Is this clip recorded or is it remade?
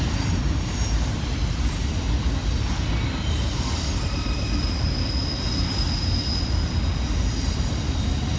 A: recorded